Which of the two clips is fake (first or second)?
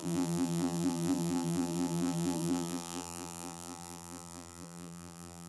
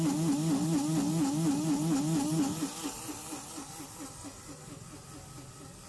first